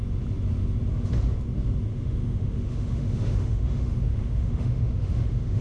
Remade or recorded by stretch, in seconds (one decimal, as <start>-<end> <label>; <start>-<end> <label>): 0.0-1.9 recorded; 1.9-5.6 remade